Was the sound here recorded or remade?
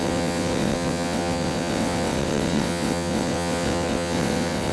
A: remade